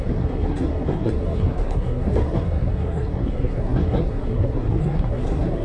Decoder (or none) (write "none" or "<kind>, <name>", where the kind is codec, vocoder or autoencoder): codec, SNAC